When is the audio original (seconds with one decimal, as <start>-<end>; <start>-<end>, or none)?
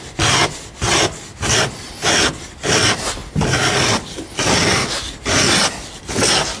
0.0-6.6